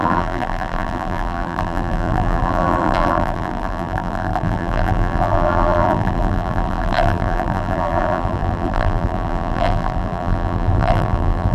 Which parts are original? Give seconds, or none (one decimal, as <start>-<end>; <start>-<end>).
none